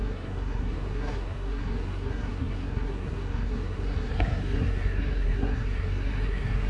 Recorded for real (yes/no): no